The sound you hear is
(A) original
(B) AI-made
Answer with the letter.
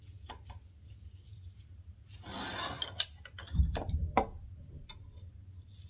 A